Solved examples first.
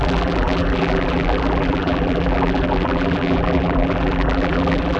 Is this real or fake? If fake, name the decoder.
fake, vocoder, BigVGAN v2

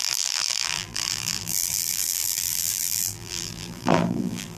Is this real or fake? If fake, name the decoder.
fake, vocoder, BigVGAN v2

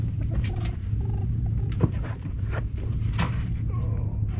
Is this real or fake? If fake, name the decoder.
fake, vocoder, BigVGAN v2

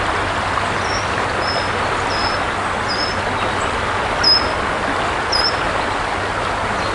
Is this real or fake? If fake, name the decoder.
real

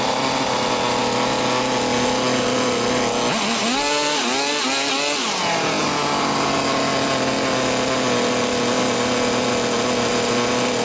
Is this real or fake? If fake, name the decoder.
real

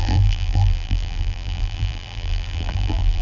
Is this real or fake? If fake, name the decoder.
fake, vocoder, BigVGAN v2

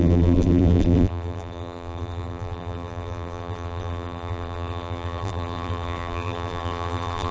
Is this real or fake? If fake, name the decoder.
fake, vocoder, BigVGAN v2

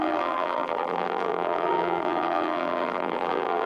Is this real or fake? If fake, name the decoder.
fake, vocoder, BigVGAN v2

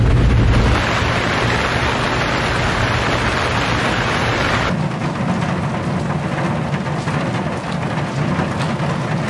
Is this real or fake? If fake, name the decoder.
real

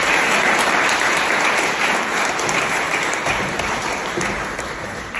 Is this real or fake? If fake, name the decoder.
fake, vocoder, BigVGAN v2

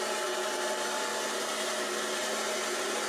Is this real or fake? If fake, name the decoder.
real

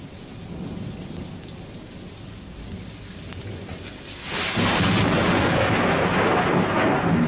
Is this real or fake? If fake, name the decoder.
real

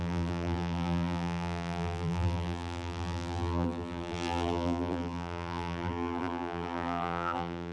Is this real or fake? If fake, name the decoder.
fake, vocoder, BigVGAN v2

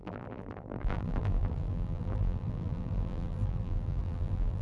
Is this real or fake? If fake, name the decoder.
fake, vocoder, BigVGAN v2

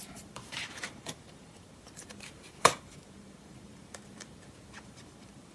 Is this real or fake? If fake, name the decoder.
fake, vocoder, BigVGAN v2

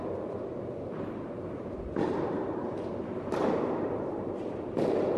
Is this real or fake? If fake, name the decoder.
fake, vocoder, BigVGAN v2